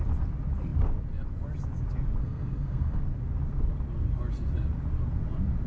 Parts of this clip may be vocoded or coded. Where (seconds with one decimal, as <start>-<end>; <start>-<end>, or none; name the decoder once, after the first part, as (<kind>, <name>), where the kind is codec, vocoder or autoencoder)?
2.2-3.0 (codec, SNAC)